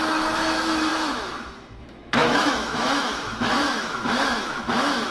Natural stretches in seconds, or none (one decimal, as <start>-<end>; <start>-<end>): none